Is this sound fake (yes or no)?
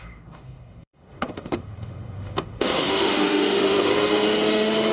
yes